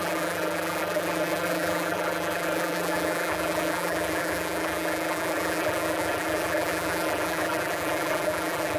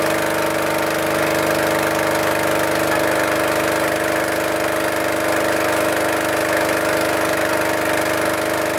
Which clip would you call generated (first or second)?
first